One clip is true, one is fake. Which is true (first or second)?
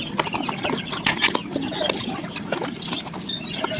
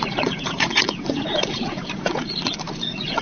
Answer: first